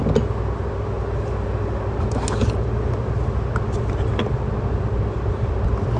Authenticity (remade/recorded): recorded